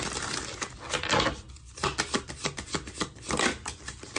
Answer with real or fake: real